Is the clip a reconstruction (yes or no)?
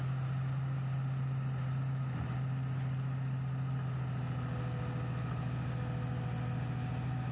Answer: no